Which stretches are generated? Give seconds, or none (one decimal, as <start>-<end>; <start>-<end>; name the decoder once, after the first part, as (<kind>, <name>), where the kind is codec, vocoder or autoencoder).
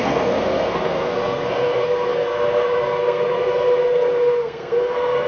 0.0-5.3 (codec, SNAC)